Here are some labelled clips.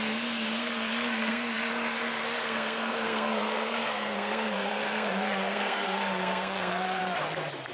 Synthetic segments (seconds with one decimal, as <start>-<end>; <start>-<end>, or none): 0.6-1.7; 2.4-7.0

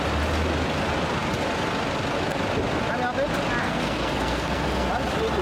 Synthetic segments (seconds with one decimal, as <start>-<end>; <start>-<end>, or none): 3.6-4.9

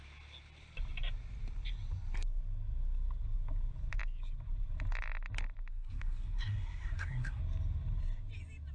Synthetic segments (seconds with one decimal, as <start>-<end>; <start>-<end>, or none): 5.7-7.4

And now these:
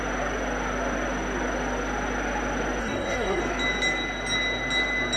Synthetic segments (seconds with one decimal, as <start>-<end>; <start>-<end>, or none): 2.8-3.4

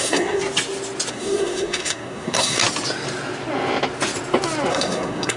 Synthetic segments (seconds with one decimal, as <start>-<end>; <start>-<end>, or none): 0.0-0.4; 1.1-2.6; 4.7-5.4

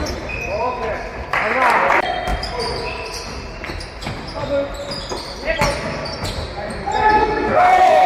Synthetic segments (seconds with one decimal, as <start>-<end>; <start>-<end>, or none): 7.2-8.1

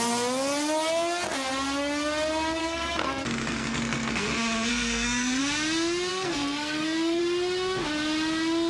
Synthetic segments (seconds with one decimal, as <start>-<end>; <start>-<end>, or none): 2.6-4.3; 4.7-5.4; 6.1-7.2

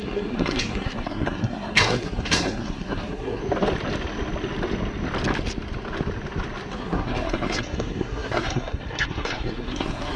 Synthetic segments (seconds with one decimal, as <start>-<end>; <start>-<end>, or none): 0.0-3.4; 6.7-10.2